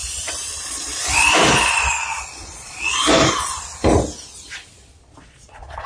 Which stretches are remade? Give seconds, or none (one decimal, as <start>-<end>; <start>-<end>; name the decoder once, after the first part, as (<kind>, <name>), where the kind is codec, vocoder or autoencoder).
0.5-0.9 (vocoder, Vocos); 1.9-3.0; 5.0-5.9